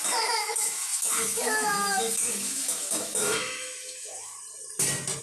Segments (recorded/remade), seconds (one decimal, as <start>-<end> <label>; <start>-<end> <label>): 0.0-4.3 remade; 4.3-5.2 recorded